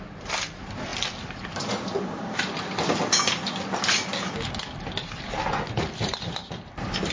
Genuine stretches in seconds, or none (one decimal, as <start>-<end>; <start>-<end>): 0.0-7.1